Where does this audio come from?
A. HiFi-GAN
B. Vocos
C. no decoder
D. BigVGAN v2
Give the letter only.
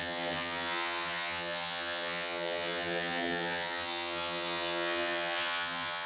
A